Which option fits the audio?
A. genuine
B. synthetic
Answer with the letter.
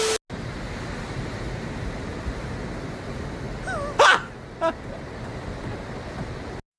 A